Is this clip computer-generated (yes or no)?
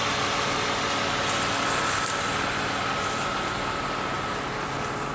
no